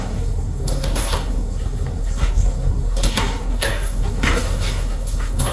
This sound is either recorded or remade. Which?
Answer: remade